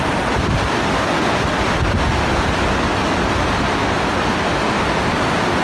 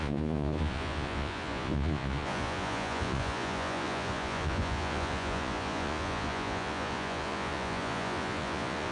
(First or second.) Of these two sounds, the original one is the first